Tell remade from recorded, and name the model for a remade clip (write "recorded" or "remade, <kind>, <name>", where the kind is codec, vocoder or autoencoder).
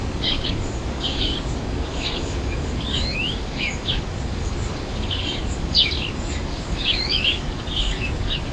remade, codec, DAC